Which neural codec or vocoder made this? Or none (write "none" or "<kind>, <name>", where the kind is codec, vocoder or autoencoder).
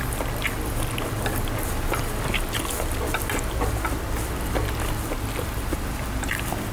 none